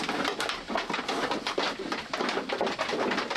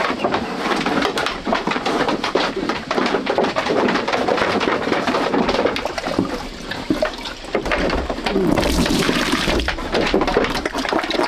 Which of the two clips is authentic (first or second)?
first